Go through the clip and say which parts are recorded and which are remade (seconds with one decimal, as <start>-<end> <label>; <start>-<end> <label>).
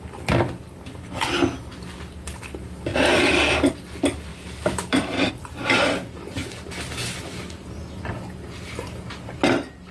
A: 0.0-4.3 recorded; 4.3-5.3 remade; 5.3-9.9 recorded